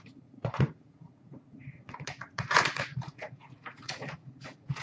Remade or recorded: remade